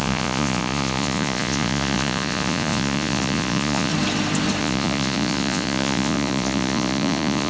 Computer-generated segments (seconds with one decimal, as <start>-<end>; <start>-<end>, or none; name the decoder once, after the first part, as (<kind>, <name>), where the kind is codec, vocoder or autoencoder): 0.0-3.9 (vocoder, Vocos); 4.6-7.5